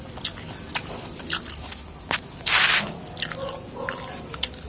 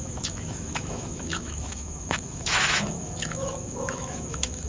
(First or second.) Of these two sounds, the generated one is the second